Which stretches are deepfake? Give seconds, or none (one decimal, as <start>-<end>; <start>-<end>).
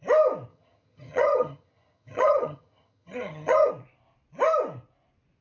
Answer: 0.5-3.7